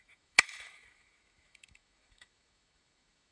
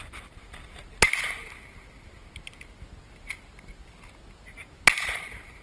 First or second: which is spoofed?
first